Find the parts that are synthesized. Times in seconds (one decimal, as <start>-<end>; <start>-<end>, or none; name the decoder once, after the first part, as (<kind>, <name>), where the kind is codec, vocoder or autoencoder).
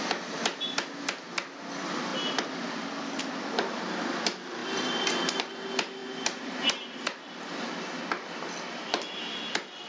6.0-8.0 (vocoder, BigVGAN v2)